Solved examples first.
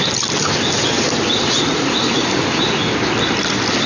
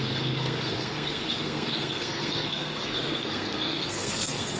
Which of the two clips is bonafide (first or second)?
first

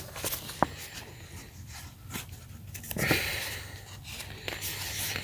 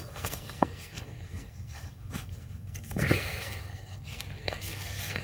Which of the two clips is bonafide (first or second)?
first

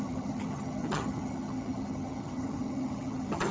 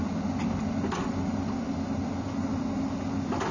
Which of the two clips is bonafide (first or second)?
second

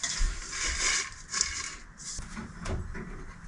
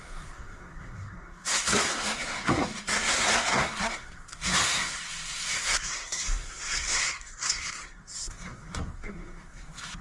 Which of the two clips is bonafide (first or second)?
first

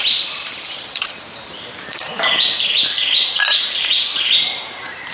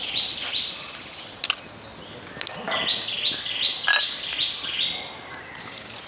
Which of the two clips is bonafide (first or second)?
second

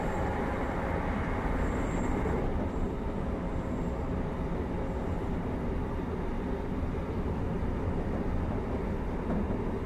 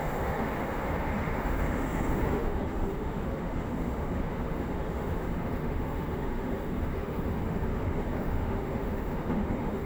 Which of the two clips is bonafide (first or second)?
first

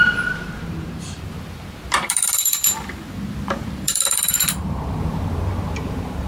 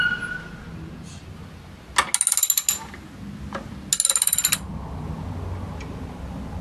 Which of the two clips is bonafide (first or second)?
second